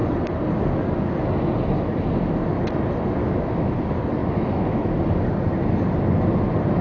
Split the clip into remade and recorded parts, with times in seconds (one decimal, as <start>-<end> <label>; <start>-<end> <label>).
0.0-3.2 recorded; 3.2-3.7 remade; 3.7-4.2 recorded; 4.2-4.9 remade; 4.9-6.8 recorded